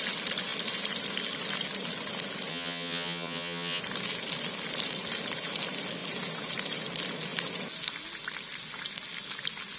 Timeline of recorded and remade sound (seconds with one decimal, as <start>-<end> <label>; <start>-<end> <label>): 0.0-2.5 recorded; 2.5-3.8 remade; 3.8-9.8 recorded